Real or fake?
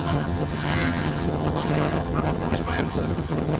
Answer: fake